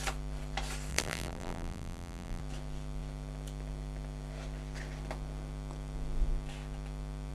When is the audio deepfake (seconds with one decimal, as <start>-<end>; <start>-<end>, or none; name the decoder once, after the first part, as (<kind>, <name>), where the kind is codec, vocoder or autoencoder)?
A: 0.9-2.4 (vocoder, BigVGAN v2)